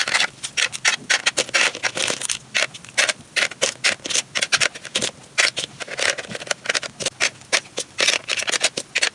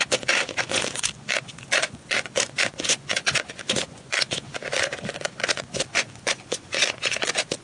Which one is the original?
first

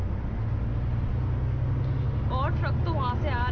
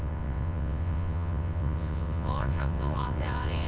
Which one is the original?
first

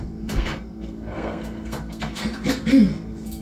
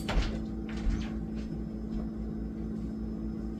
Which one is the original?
second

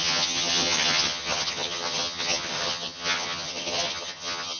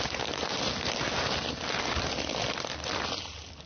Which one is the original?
second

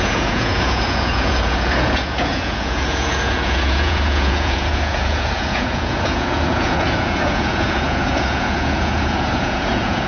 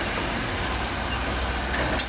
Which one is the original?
second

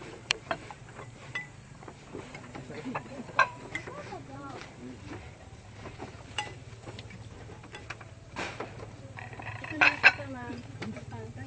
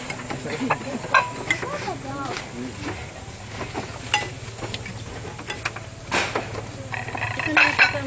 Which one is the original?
second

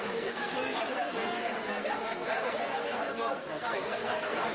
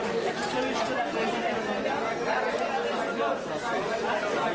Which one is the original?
second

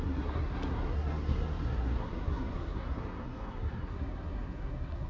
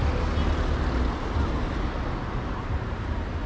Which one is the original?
second